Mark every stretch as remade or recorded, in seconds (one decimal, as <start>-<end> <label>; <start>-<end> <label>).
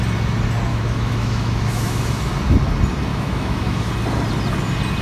0.0-0.7 recorded; 0.7-2.3 remade; 2.3-3.1 recorded; 3.1-3.9 remade; 3.9-5.0 recorded